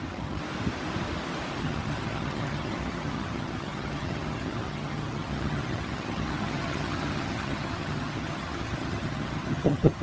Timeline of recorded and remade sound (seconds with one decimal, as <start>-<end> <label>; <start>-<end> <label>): 0.0-0.4 remade; 0.4-1.6 recorded; 1.6-10.0 remade